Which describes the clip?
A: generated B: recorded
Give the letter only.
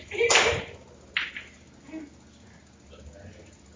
B